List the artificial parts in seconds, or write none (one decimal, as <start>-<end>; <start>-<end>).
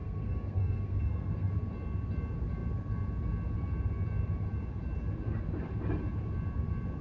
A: 0.0-1.5